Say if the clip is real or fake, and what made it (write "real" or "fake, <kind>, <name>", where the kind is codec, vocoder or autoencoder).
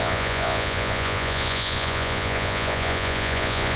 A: fake, vocoder, Vocos